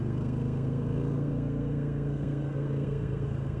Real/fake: fake